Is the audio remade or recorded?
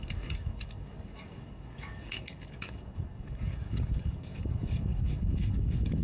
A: remade